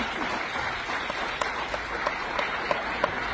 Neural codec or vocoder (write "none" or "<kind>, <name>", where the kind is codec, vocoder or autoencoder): none